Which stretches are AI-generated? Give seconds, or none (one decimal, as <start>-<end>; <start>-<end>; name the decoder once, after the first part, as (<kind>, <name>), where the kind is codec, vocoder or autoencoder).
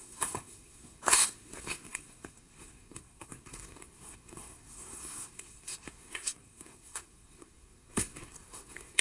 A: 0.0-9.0 (codec, SNAC)